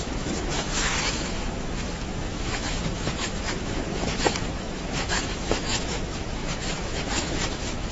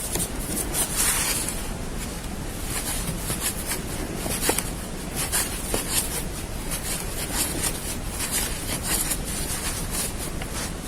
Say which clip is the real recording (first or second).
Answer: second